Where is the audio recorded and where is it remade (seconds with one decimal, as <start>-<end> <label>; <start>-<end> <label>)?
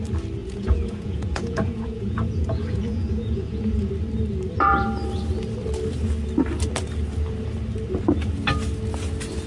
0.0-0.4 recorded; 0.4-3.9 remade; 3.9-9.5 recorded